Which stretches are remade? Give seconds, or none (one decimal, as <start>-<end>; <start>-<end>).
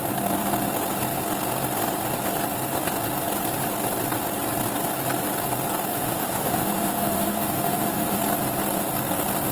5.9-8.2